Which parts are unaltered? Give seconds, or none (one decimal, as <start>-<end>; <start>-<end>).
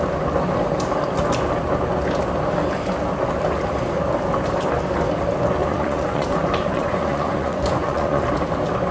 0.0-5.6; 8.2-8.9